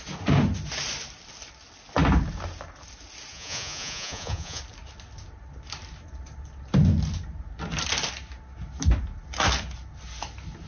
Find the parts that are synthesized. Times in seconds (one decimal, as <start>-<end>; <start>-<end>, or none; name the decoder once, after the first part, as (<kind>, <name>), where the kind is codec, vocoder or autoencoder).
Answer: 3.3-4.6 (vocoder, Vocos)